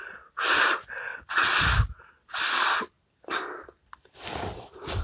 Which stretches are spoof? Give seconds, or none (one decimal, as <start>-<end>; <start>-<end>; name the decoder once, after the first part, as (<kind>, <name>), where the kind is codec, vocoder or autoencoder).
1.1-1.6 (vocoder, WaveNeXt)